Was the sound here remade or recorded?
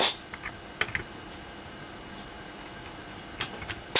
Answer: recorded